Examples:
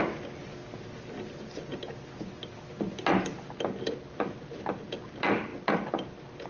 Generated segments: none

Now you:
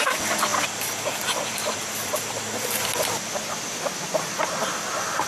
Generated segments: 0.5-3.1 (vocoder, BigVGAN v2)

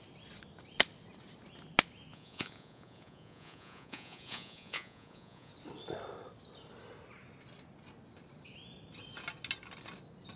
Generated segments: 2.1-5.5 (vocoder, Vocos)

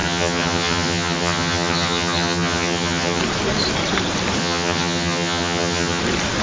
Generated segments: 0.0-3.2 (vocoder, HiFi-GAN); 4.4-6.0

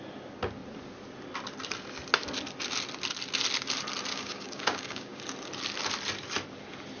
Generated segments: 4.1-5.2 (codec, DAC)

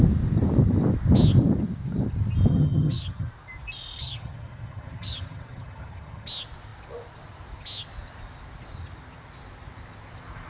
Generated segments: 2.5-3.3 (vocoder, HiFi-GAN); 4.0-6.3